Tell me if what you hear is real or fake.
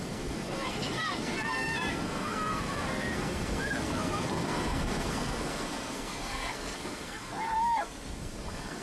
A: fake